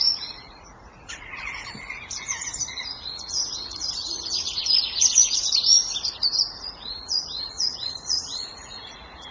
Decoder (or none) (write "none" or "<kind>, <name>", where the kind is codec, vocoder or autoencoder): vocoder, Vocos